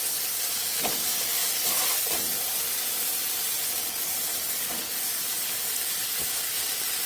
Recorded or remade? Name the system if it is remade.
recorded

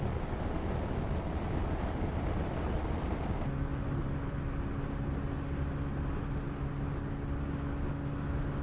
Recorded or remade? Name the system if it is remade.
recorded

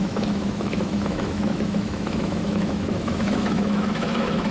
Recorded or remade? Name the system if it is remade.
remade, autoencoder, DAC-VAE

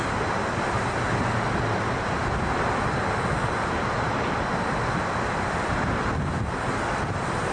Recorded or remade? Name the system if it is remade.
recorded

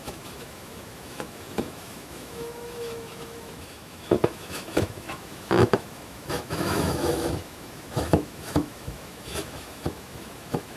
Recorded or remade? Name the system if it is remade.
remade, autoencoder, DAC-VAE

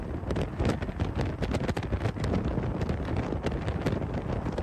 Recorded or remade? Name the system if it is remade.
recorded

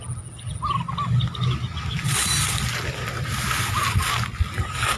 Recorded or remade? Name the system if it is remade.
recorded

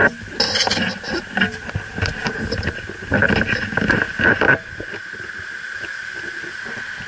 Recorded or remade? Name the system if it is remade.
recorded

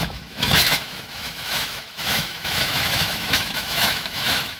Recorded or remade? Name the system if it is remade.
remade, autoencoder, DAC-VAE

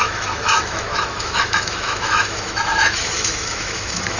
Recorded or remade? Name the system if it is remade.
remade, autoencoder, DAC-VAE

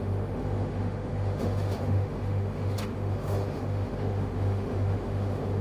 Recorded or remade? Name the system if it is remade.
remade, autoencoder, DAC-VAE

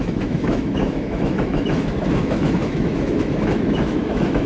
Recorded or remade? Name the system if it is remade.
remade, autoencoder, DAC-VAE